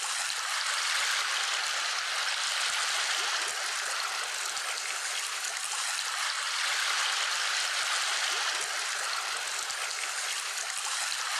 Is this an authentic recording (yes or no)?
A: yes